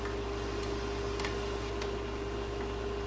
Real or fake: real